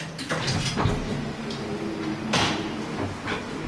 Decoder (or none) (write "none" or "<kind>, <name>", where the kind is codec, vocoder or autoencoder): none